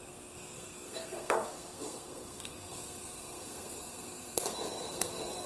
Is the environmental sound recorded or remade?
remade